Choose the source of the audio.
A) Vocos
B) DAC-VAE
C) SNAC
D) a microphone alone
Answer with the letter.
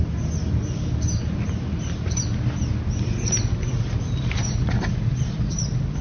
D